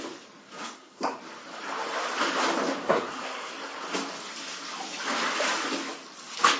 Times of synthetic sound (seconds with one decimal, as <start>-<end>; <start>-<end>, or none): 0.4-1.2; 2.8-3.5